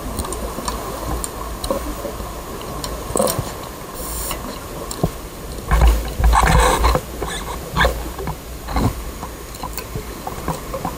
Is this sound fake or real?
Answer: real